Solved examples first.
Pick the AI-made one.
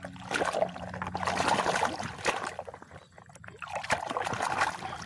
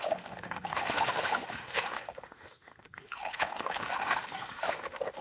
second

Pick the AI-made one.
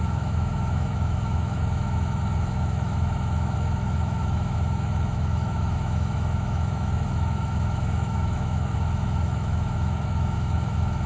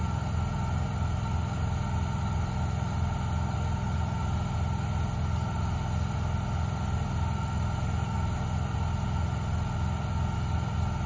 first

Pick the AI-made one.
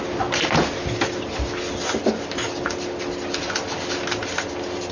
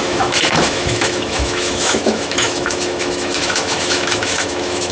second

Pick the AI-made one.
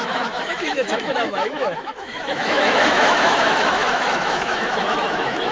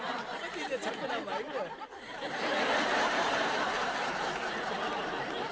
first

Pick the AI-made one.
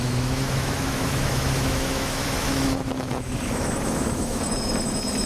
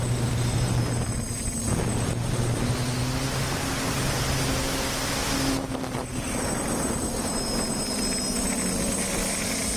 first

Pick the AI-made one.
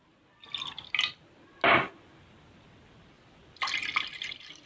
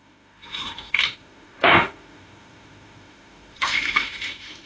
second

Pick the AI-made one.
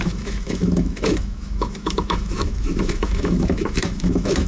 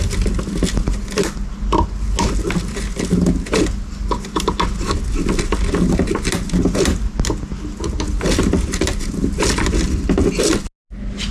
first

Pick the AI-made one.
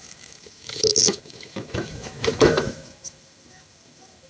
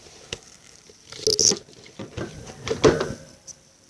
first